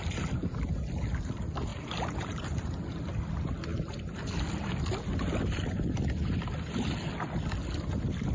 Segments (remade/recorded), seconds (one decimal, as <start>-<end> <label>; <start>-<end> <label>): 0.0-1.7 recorded; 1.7-3.0 remade; 3.0-3.7 recorded; 3.7-4.8 remade; 4.8-8.3 recorded